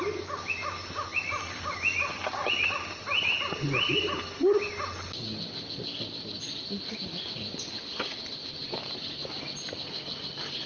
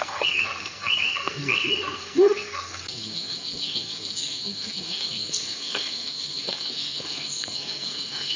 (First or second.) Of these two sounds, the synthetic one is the second